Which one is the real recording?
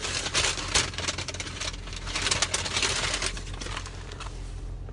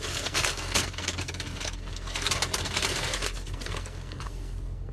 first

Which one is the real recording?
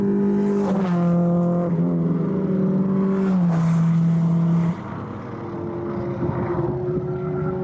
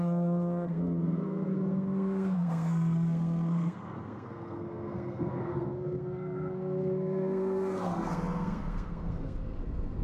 first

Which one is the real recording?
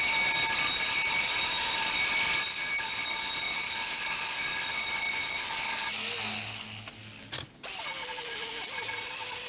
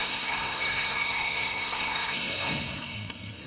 first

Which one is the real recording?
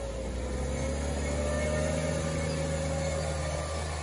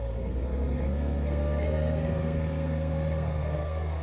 first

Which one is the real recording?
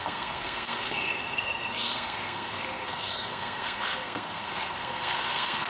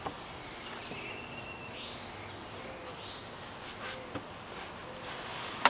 second